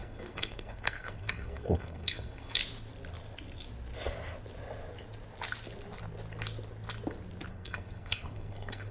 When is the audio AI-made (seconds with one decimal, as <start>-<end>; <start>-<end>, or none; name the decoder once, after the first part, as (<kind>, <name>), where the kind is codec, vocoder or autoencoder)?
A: 0.0-2.6 (codec, SNAC); 7.5-8.9